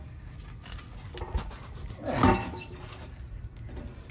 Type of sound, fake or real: real